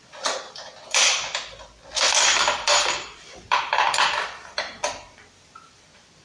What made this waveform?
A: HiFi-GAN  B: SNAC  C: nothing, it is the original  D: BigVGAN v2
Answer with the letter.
D